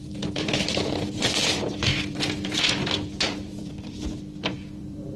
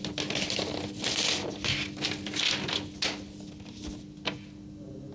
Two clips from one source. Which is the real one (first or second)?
second